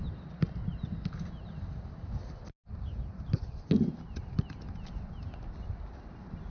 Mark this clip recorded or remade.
recorded